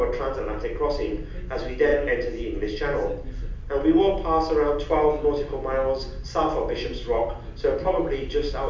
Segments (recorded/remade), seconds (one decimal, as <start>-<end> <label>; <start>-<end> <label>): 0.0-8.7 recorded